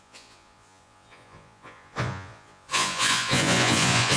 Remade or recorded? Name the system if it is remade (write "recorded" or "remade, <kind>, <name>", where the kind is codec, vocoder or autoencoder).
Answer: remade, vocoder, Vocos